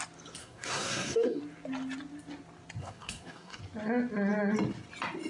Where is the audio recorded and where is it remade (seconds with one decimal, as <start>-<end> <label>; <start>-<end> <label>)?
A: 0.0-0.4 recorded; 0.4-1.4 remade; 1.4-2.8 recorded; 2.8-3.6 remade; 3.6-5.3 recorded